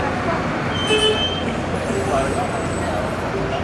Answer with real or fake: real